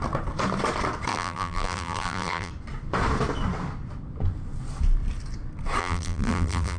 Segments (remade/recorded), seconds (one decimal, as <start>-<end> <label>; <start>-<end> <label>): 0.0-1.1 recorded; 1.1-2.5 remade; 2.5-5.8 recorded; 5.8-6.8 remade